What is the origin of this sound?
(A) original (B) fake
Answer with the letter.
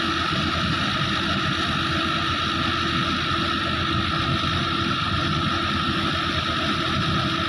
A